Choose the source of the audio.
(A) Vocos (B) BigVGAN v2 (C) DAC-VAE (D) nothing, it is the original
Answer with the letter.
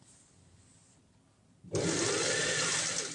D